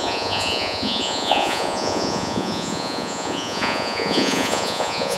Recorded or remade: remade